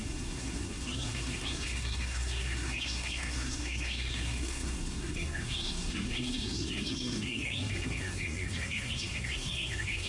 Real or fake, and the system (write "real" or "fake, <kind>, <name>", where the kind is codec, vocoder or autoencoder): fake, codec, SNAC